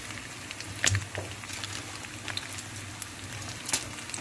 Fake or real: real